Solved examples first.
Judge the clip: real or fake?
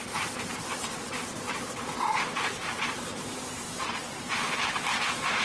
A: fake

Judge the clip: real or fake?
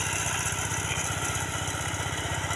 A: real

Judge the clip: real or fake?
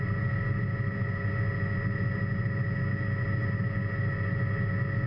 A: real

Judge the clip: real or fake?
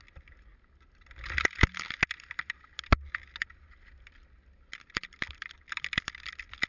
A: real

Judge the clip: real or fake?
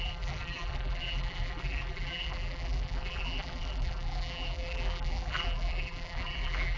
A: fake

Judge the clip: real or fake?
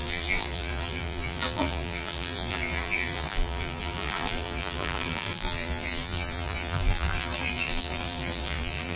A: fake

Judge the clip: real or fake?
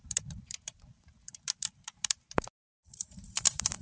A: fake